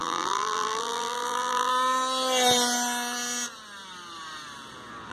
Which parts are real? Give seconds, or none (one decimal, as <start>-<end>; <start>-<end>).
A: 1.7-5.1